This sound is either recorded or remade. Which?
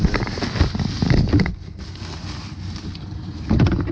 recorded